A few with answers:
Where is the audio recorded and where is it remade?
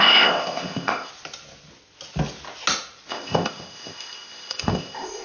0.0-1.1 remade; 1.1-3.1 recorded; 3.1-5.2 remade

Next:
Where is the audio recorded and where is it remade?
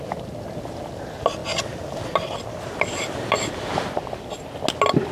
0.0-5.1 recorded